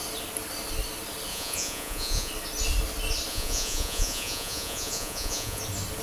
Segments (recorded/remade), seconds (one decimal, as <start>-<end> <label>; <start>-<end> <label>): 0.0-1.3 recorded; 1.3-2.3 remade; 2.3-3.3 recorded; 3.3-5.6 remade; 5.6-6.0 recorded